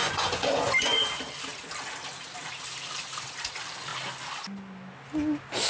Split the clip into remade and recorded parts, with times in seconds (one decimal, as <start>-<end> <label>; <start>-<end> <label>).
0.0-1.0 remade; 1.0-5.7 recorded